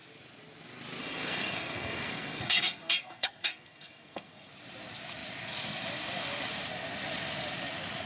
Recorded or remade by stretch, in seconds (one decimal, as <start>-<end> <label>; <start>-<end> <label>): 0.0-1.0 recorded; 1.0-4.5 remade; 4.5-8.1 recorded